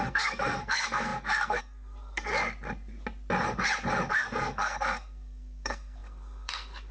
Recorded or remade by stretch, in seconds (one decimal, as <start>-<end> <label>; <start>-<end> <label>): 0.0-2.3 remade; 2.3-4.1 recorded; 4.1-6.9 remade